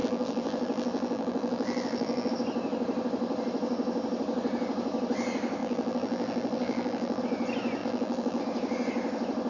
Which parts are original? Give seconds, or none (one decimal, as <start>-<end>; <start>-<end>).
2.3-5.6; 7.2-7.8; 8.4-9.5

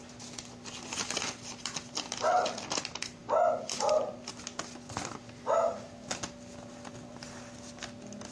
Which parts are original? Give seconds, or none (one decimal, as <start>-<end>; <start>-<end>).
0.0-8.3

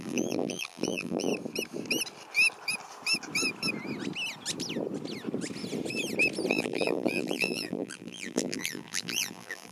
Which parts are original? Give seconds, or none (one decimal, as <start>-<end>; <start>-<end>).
1.3-6.5